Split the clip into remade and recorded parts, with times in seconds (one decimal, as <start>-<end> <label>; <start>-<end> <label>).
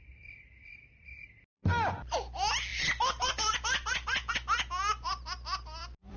0.0-2.7 recorded; 2.7-4.3 remade; 4.3-6.2 recorded